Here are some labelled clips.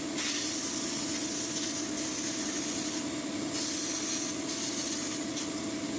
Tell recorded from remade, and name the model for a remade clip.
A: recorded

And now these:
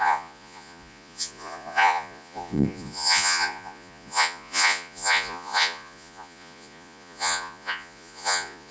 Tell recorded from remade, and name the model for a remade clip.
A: remade, vocoder, Vocos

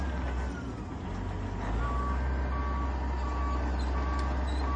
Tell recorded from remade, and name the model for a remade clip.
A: recorded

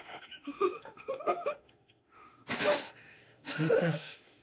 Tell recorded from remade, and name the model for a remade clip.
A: remade, autoencoder, DAC-VAE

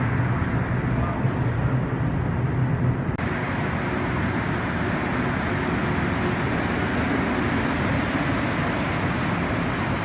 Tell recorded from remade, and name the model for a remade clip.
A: recorded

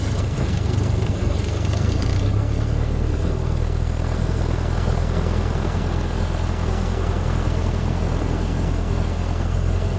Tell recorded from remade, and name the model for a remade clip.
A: remade, codec, SNAC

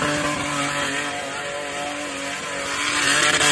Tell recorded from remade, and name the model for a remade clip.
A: recorded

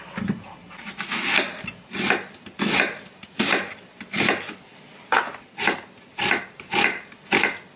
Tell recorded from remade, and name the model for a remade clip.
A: recorded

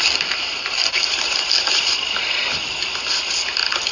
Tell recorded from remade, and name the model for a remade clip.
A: recorded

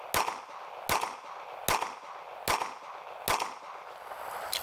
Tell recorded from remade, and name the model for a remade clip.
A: recorded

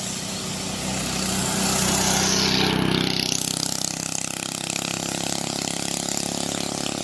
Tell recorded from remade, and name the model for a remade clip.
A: recorded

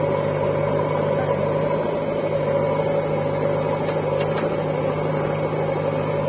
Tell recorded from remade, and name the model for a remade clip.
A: recorded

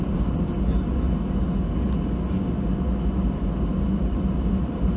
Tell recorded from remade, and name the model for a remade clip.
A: recorded